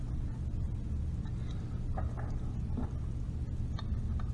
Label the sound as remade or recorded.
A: recorded